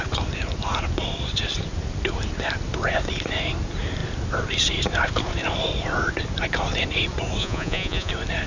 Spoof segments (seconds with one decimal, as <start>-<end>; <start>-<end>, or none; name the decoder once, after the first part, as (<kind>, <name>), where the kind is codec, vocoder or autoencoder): 7.4-8.1 (vocoder, Vocos)